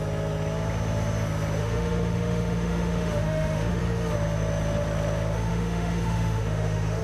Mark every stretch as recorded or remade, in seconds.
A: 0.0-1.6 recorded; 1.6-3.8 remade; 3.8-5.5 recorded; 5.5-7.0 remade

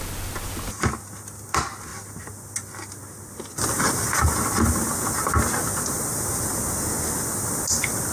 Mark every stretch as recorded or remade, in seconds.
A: 0.0-8.1 recorded

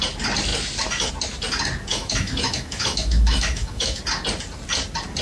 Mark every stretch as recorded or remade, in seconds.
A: 0.0-1.9 recorded; 1.9-4.0 remade; 4.0-5.2 recorded

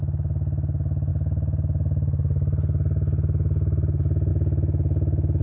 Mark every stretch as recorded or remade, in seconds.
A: 0.0-5.4 recorded

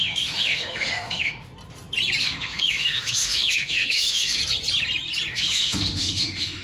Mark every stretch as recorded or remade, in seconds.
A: 0.0-1.5 remade; 1.5-2.2 recorded; 2.2-4.4 remade; 4.4-5.3 recorded; 5.3-6.6 remade

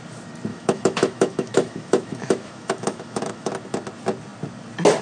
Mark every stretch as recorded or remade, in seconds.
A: 0.0-0.5 recorded; 0.5-3.5 remade; 3.5-5.0 recorded

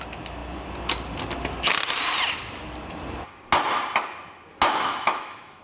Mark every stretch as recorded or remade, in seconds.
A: 0.0-4.5 recorded; 4.5-5.6 remade